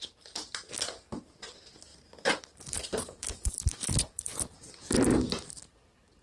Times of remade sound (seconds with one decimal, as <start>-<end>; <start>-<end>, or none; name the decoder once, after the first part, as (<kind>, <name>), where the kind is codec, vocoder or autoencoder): 1.9-4.8 (vocoder, BigVGAN v2)